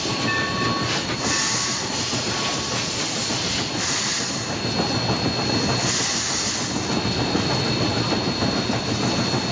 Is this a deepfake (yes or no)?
no